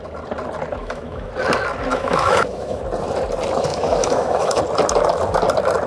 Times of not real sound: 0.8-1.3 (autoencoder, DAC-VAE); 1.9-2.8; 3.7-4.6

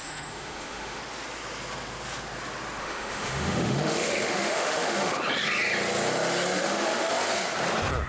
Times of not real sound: 0.0-1.0 (autoencoder, DAC-VAE); 2.8-5.1; 6.6-7.1

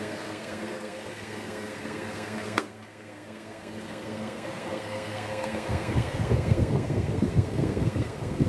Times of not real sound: 0.0-8.5 (codec, SNAC)

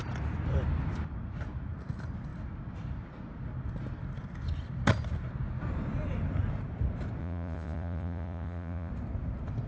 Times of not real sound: 7.2-8.9 (vocoder, Vocos)

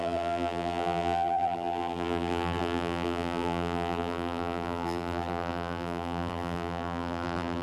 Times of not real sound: 0.0-7.6 (vocoder, BigVGAN v2)

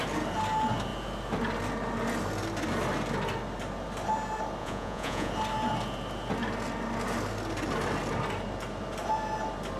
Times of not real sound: 4.6-5.3 (vocoder, Vocos)